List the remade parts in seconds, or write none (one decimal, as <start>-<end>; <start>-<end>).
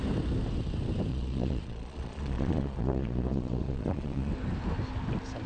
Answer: 1.1-4.3